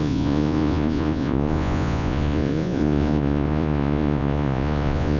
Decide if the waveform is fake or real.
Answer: fake